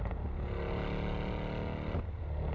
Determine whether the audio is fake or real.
real